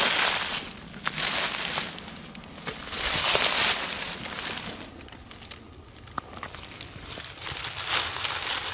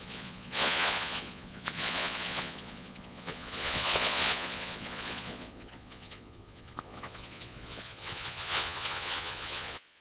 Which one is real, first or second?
first